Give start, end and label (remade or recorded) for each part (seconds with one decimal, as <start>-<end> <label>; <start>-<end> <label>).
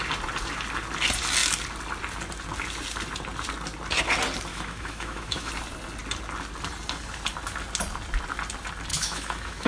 0.0-4.5 recorded; 4.5-5.5 remade; 5.5-8.9 recorded; 8.9-9.7 remade